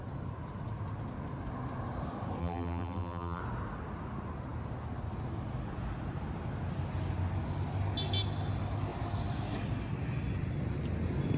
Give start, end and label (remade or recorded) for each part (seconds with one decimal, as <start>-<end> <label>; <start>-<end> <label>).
0.0-2.4 recorded; 2.4-3.4 remade; 3.4-11.4 recorded